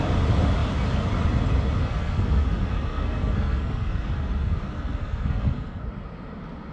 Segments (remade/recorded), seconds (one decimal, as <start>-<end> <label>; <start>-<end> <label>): 0.0-1.8 recorded; 1.8-5.8 remade; 5.8-6.7 recorded